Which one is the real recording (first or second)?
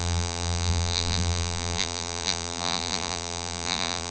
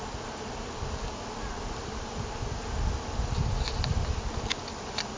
second